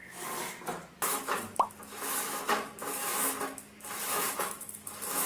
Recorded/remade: remade